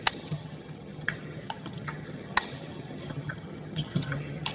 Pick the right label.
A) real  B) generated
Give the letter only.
B